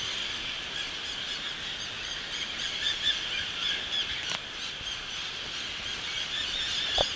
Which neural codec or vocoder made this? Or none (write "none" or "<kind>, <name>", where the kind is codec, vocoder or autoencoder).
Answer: none